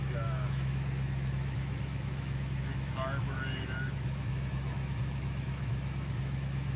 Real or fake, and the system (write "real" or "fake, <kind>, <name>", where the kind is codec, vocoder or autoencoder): fake, autoencoder, DAC-VAE